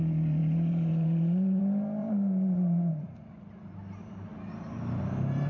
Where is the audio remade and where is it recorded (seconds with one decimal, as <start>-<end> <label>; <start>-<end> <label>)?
0.0-0.4 recorded; 0.4-1.6 remade; 1.6-2.0 recorded; 2.0-2.9 remade; 2.9-5.5 recorded